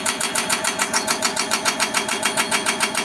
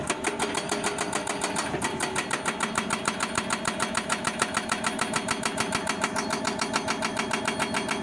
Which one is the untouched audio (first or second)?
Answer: second